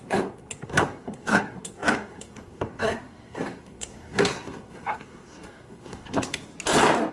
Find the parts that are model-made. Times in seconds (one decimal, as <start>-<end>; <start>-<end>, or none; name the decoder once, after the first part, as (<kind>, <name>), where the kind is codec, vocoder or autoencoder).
0.0-6.5 (codec, SNAC)